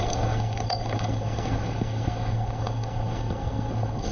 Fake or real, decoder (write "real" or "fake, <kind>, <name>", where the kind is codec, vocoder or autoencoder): fake, codec, SNAC